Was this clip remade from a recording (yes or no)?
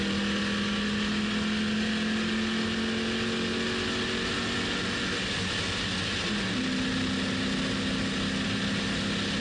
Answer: no